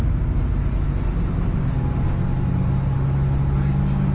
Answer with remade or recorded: recorded